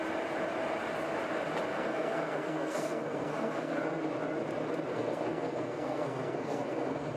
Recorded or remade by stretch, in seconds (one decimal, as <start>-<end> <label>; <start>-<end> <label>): 0.0-1.7 recorded; 1.7-3.8 remade; 3.8-4.9 recorded; 4.9-7.2 remade